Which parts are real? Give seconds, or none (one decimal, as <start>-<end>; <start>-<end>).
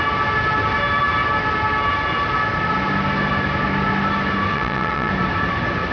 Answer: 0.0-4.5; 5.1-5.9